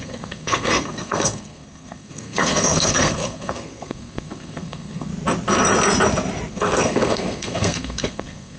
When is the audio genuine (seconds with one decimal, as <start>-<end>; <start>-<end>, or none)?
5.1-6.5